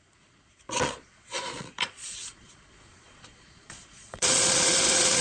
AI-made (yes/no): yes